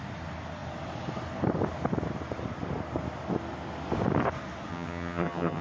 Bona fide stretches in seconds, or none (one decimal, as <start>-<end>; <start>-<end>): 0.0-4.7